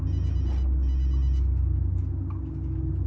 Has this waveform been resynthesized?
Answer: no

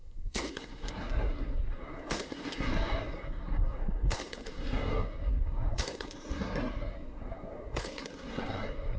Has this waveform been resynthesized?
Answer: yes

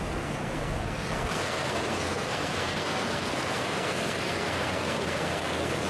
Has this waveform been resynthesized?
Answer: yes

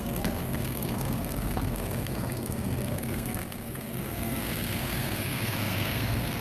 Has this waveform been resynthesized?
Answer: yes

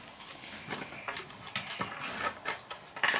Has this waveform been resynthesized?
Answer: no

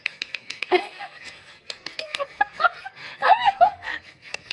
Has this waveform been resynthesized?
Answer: yes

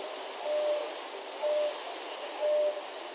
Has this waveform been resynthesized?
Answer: no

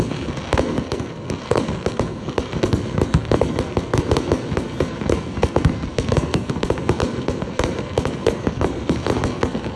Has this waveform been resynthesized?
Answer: yes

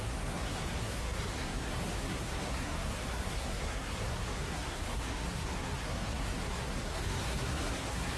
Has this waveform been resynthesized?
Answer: yes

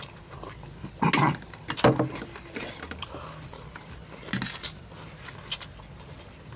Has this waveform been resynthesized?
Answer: no